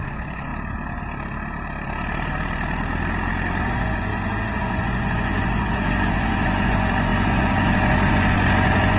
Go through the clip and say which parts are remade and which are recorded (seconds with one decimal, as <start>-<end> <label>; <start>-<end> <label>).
0.0-0.5 remade; 0.5-3.6 recorded; 3.6-9.0 remade